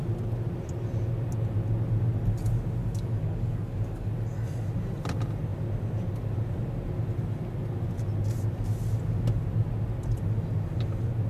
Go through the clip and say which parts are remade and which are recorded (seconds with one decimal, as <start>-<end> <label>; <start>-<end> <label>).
0.0-2.8 recorded; 2.8-4.1 remade; 4.1-11.3 recorded